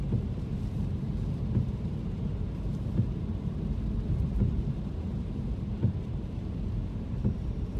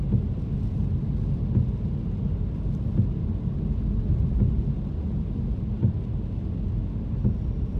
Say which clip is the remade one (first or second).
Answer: first